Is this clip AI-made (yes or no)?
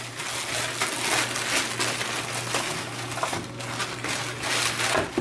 no